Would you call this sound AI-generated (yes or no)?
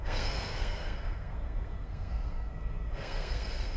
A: yes